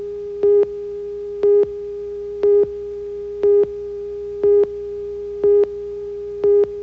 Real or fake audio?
real